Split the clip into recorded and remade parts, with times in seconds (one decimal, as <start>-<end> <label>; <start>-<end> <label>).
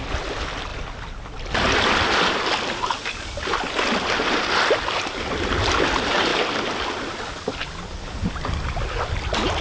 0.0-9.6 recorded